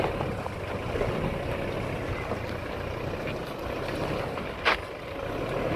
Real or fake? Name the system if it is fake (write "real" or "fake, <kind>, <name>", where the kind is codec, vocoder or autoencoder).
real